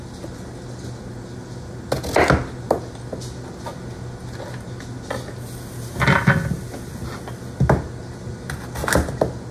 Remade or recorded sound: recorded